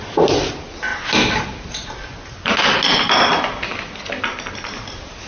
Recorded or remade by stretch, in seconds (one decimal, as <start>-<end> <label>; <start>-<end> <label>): 0.0-5.3 recorded